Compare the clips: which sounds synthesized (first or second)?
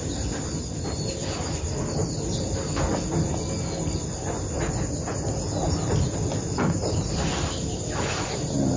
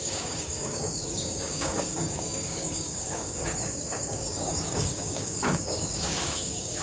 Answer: second